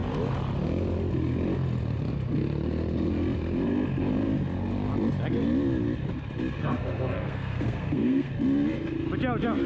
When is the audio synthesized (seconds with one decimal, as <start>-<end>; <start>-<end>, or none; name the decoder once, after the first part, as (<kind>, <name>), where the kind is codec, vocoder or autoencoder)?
6.6-8.3 (codec, SNAC)